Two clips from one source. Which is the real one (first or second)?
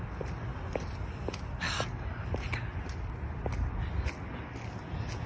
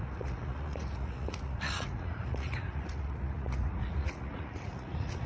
first